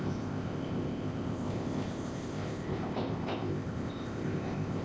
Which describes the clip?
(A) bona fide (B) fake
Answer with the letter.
B